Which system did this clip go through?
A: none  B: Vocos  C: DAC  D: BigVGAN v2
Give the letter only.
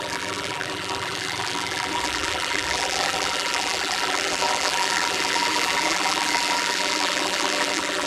D